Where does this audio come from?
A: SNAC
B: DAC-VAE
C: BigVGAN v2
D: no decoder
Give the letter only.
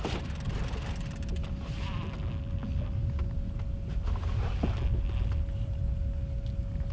D